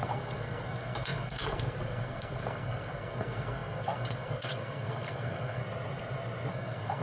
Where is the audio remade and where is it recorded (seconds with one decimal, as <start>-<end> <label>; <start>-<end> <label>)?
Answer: 0.0-5.6 remade; 5.6-6.5 recorded; 6.5-7.0 remade